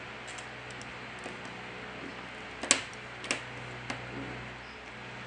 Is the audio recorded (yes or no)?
yes